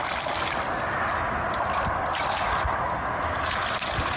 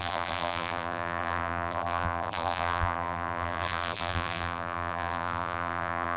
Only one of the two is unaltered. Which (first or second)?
first